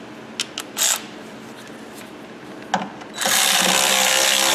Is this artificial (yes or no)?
no